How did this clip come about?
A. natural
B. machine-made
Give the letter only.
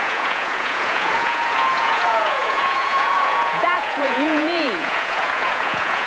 B